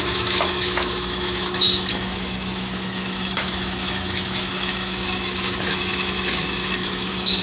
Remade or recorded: remade